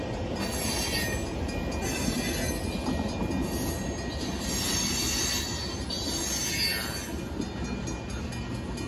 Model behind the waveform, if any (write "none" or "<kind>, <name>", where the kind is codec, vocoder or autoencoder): none